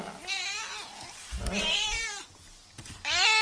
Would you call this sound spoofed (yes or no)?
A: no